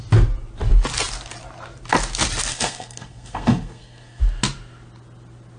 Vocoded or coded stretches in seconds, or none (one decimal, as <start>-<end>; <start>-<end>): 2.5-4.2